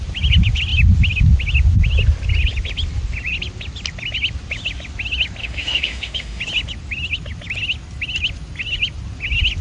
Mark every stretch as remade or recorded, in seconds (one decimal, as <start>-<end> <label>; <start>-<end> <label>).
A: 0.0-5.4 recorded; 5.4-6.4 remade; 6.4-9.6 recorded